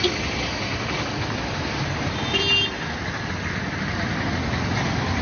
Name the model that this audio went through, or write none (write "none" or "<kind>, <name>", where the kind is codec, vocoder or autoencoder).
none